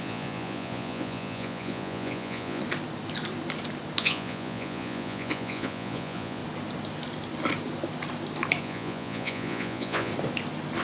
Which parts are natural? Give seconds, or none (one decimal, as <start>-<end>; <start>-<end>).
2.6-4.0; 6.4-8.6; 10.1-10.8